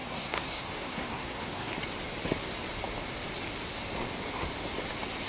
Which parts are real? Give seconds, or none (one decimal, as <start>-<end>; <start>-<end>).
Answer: 1.7-5.3